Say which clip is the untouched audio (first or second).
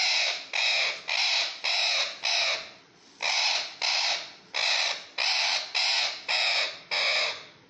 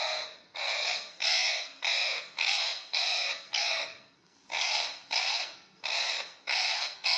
first